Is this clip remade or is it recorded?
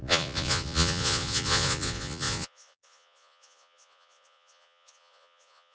remade